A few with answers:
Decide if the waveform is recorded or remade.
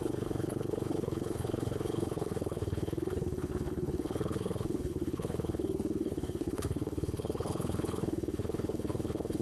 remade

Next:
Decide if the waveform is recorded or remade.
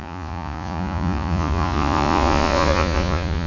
remade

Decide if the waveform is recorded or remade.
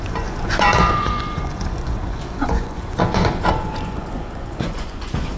remade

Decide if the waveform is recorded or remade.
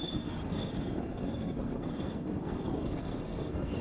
remade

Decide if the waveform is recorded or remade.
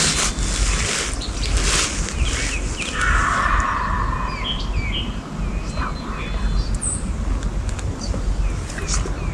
recorded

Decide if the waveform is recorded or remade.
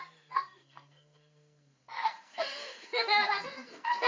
remade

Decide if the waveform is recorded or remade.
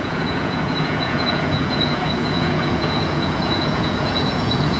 remade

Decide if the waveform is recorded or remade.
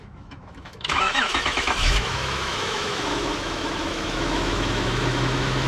remade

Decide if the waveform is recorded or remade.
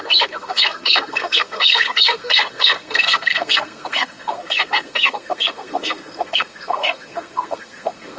remade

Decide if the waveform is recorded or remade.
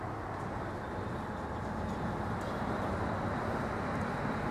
recorded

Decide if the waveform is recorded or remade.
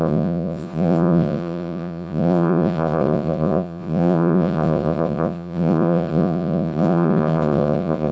remade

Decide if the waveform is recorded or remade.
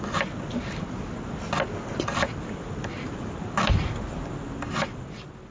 recorded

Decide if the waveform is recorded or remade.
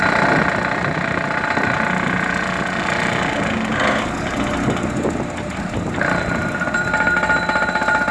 recorded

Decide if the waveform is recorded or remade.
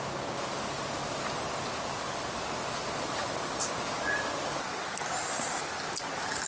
recorded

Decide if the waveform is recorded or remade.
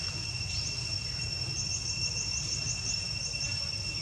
recorded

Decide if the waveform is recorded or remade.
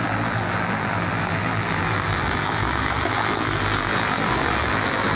remade